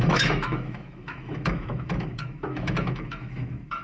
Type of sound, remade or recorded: remade